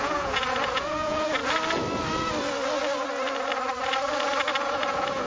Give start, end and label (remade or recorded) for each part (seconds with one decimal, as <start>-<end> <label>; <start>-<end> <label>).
0.0-1.4 remade; 1.4-4.6 recorded; 4.6-5.3 remade